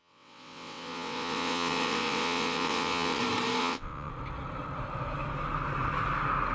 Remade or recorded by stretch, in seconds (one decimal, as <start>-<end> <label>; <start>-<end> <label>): 0.0-3.2 remade; 3.2-3.6 recorded; 3.6-4.1 remade; 4.1-6.5 recorded

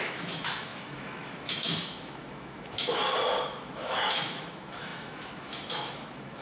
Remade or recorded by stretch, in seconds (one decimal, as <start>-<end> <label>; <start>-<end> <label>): 0.0-3.0 remade; 3.0-3.5 recorded; 3.5-6.4 remade